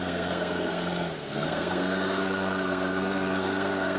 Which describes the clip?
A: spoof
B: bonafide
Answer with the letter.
A